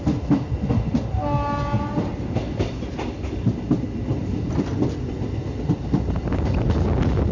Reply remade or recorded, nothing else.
recorded